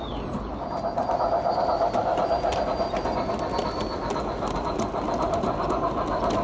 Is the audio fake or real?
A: real